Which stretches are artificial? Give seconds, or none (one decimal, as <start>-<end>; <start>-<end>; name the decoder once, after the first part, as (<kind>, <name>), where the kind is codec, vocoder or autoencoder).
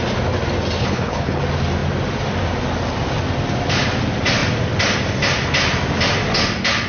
0.8-1.4 (codec, HILCodec)